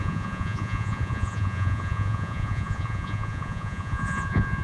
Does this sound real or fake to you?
fake